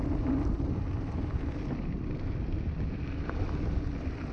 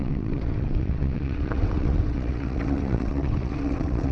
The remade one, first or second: second